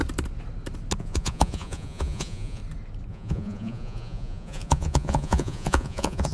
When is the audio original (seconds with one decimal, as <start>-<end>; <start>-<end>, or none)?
0.0-1.0; 2.6-3.1